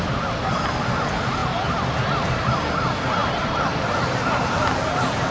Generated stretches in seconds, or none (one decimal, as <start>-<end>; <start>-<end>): none